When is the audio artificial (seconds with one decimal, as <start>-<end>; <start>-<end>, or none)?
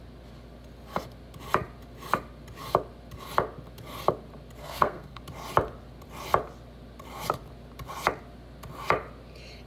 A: 4.6-5.2